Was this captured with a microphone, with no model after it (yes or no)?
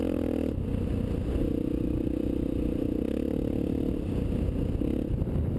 yes